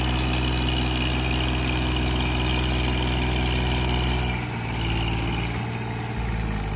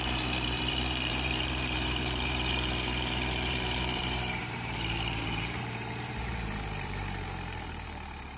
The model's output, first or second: second